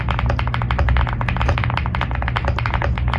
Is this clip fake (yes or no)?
no